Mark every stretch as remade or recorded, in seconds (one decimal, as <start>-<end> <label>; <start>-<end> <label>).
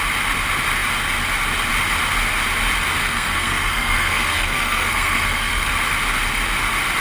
0.0-3.0 recorded; 3.0-5.7 remade; 5.7-7.0 recorded